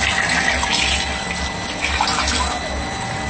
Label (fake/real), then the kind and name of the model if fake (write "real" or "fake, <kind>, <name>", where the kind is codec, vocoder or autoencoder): real